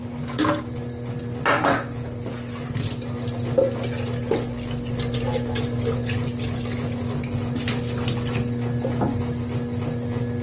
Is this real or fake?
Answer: real